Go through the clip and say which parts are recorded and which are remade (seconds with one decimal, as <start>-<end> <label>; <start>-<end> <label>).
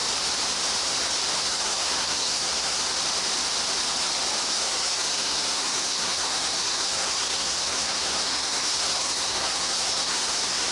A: 0.0-1.4 recorded; 1.4-2.8 remade; 2.8-4.5 recorded; 4.5-10.7 remade